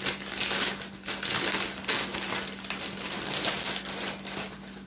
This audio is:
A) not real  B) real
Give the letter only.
B